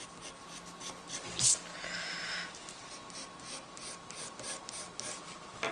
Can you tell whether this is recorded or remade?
recorded